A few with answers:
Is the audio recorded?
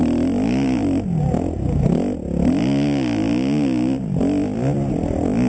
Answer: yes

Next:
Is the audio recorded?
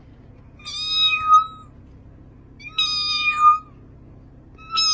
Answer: yes